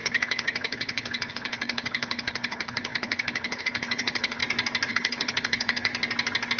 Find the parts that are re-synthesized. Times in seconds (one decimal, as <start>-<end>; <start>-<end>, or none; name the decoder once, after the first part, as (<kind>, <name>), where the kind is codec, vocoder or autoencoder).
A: 0.0-4.4 (codec, HILCodec); 4.9-5.9